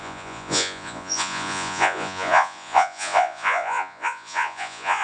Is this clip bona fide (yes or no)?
no